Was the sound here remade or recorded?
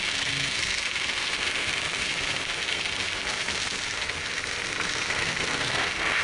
remade